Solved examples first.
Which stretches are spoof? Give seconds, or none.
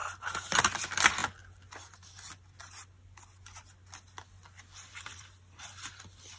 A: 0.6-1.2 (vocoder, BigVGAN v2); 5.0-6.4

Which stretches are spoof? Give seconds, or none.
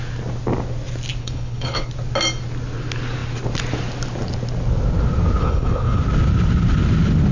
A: 1.2-1.9 (codec, HILCodec); 5.4-6.0